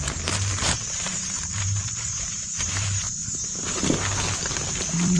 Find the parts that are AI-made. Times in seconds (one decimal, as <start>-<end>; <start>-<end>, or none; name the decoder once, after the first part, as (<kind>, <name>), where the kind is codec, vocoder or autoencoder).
0.0-3.2 (vocoder, BigVGAN v2); 4.4-5.2